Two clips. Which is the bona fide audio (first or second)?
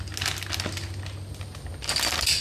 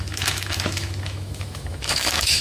first